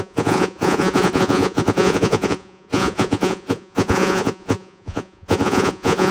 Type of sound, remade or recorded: remade